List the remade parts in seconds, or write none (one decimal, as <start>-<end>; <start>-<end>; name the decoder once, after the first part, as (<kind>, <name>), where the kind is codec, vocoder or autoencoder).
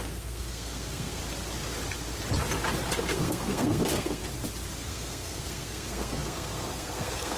0.0-1.2 (codec, SNAC); 3.0-4.2; 4.9-7.4